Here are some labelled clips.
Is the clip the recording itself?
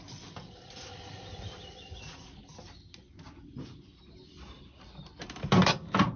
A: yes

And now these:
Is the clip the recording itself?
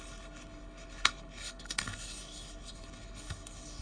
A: no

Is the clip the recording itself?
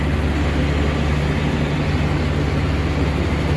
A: yes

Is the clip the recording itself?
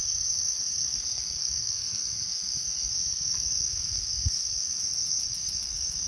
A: no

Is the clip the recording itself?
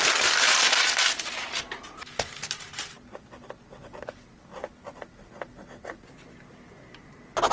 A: yes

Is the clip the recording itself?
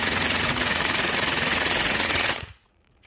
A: no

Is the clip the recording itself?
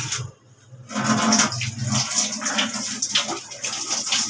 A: yes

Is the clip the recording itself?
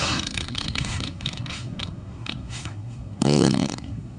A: no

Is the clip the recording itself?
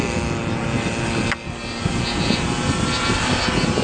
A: yes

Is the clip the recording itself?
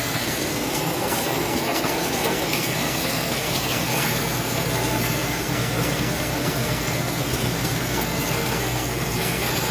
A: no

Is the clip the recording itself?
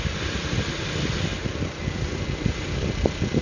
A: yes